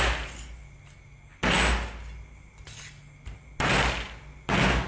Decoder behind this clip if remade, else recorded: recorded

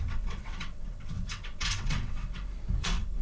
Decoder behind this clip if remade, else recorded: remade, vocoder, WaveNeXt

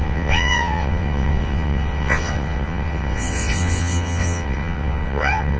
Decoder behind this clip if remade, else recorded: remade, vocoder, WaveNeXt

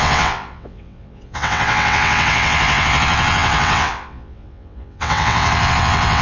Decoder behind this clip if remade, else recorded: remade, vocoder, WaveNeXt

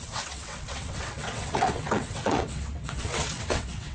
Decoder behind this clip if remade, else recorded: remade, vocoder, WaveNeXt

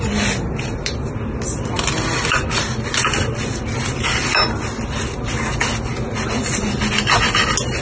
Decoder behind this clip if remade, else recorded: recorded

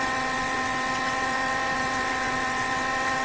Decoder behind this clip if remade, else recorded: remade, vocoder, WaveNeXt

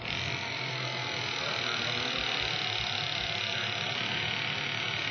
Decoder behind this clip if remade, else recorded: recorded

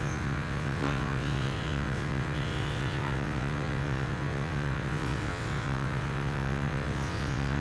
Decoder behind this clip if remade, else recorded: remade, vocoder, WaveNeXt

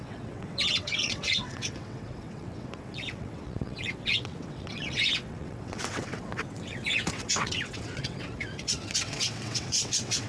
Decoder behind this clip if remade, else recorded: remade, vocoder, WaveNeXt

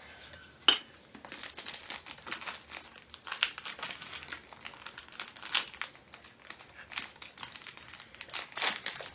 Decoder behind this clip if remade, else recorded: recorded